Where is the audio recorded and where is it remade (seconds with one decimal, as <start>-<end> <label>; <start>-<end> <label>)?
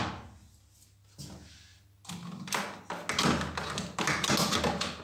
0.0-5.0 recorded